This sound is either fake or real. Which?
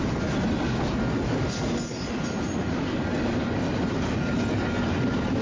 real